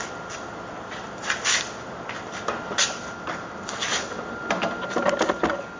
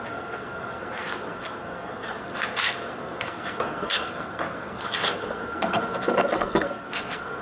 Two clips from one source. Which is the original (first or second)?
first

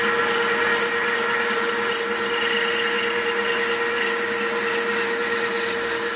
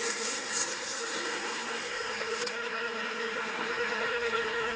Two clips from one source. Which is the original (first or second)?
first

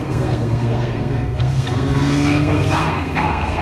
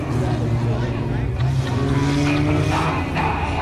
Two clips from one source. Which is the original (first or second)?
second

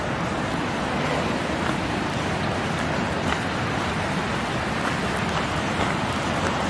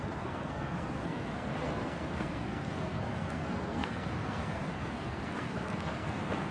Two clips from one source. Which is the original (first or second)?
first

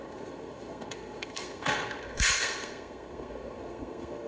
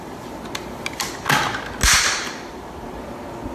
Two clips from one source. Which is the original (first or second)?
second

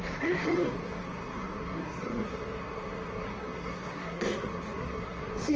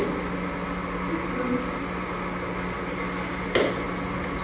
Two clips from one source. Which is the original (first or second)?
second